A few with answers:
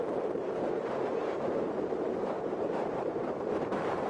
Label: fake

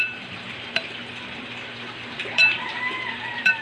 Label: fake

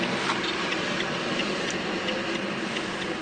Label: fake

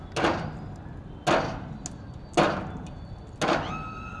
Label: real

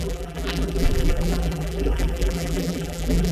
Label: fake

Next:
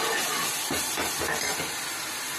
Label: real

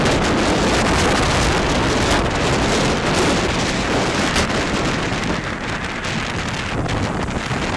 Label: real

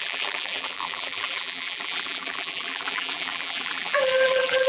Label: fake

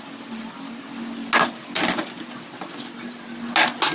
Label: real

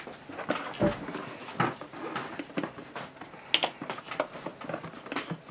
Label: real